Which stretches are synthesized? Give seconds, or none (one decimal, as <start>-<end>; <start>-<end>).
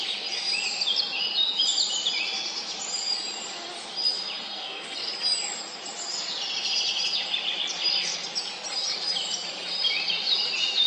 4.5-5.1